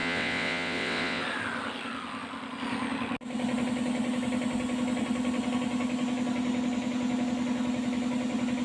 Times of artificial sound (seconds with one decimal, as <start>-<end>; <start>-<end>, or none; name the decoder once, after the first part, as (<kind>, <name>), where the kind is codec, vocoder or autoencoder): 0.0-1.2 (vocoder, WaveNeXt)